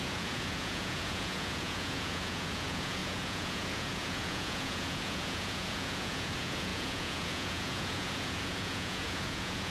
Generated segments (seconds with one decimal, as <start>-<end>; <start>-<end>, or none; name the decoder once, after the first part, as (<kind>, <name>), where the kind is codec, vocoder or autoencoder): 0.0-9.7 (vocoder, Vocos)